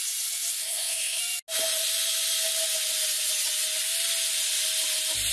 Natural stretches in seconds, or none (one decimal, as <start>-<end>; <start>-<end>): 0.0-0.5; 1.2-5.3